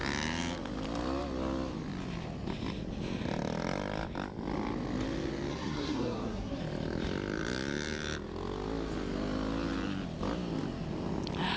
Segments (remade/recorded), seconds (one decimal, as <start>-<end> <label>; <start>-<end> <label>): 0.0-5.5 recorded; 5.5-6.6 remade; 6.6-11.6 recorded